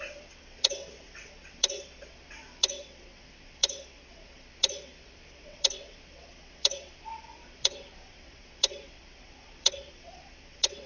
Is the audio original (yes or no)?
no